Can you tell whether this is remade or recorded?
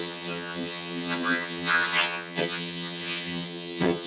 remade